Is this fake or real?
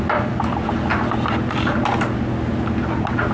real